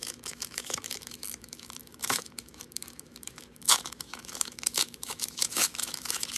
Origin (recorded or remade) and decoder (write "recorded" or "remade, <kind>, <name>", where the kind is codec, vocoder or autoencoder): remade, autoencoder, DAC-VAE